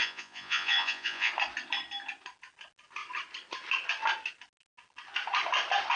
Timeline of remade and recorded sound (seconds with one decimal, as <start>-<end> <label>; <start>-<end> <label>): 0.0-1.3 remade; 1.3-6.0 recorded